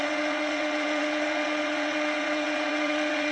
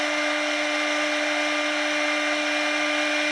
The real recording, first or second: second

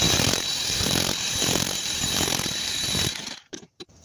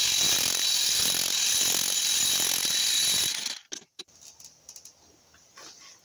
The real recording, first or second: second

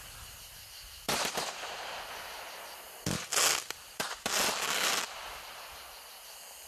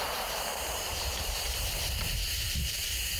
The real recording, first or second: first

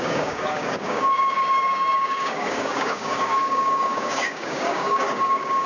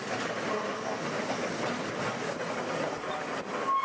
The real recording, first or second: second